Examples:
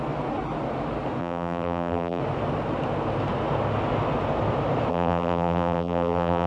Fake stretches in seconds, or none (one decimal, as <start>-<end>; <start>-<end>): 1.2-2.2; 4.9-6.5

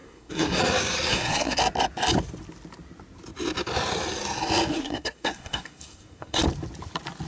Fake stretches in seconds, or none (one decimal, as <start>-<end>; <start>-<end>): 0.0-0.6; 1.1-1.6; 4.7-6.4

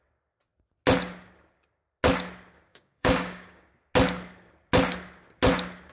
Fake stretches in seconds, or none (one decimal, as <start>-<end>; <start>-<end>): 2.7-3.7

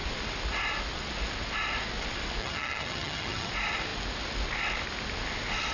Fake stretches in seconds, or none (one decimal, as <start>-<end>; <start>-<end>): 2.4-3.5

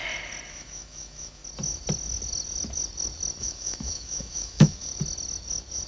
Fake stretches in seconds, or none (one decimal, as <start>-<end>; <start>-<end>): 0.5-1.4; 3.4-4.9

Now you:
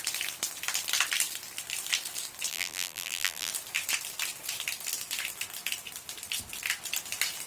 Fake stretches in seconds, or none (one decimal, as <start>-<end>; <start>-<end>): 2.5-3.5